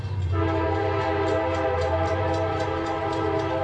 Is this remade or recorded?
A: remade